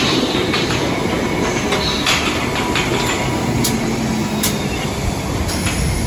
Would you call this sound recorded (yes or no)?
yes